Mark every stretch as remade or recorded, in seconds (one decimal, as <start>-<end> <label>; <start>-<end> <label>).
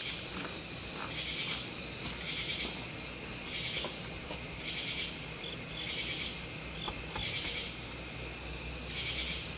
0.0-9.6 recorded